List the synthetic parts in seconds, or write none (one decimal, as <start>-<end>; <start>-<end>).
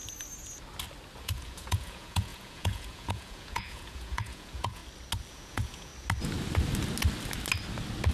1.2-4.8; 5.3-5.9